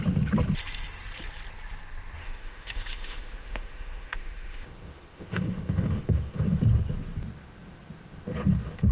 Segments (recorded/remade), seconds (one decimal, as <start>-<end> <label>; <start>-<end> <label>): 0.0-2.2 recorded; 2.2-6.6 remade; 6.6-8.9 recorded